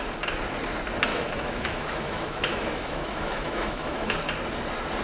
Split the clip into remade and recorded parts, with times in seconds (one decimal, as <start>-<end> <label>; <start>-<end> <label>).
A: 0.0-1.1 recorded; 1.1-4.1 remade; 4.1-5.0 recorded